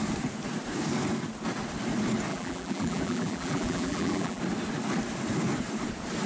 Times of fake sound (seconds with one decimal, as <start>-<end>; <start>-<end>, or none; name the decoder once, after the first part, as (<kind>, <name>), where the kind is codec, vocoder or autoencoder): 2.3-4.4 (vocoder, BigVGAN v2)